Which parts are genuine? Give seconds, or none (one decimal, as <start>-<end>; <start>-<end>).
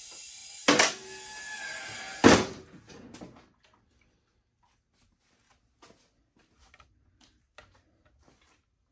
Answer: 0.0-8.9